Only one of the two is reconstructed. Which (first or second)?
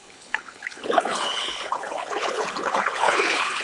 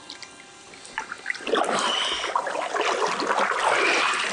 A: first